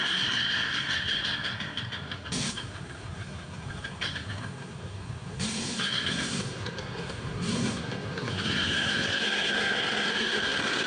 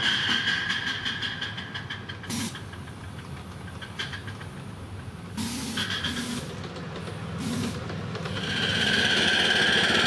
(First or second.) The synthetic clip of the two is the first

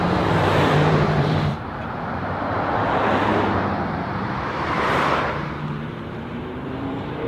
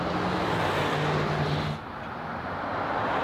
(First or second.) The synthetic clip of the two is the first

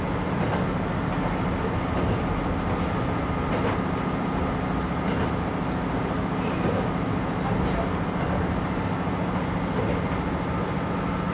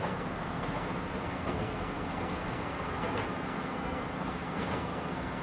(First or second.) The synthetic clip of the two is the second